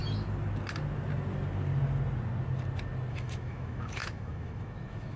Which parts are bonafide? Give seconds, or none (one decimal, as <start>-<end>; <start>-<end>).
0.0-3.1